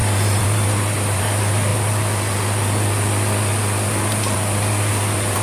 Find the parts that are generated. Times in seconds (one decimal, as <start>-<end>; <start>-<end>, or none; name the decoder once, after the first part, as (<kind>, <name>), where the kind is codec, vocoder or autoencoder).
0.0-1.7 (vocoder, BigVGAN v2); 4.9-5.4